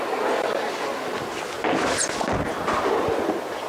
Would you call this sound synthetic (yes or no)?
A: no